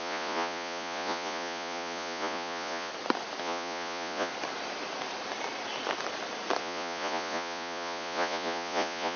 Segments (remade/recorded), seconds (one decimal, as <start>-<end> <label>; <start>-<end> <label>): 0.0-2.9 remade; 2.9-3.4 recorded; 3.4-4.3 remade; 4.3-6.6 recorded; 6.6-9.2 remade